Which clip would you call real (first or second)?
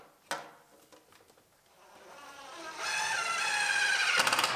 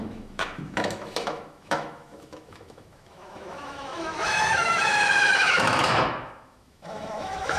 first